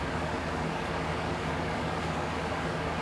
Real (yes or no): no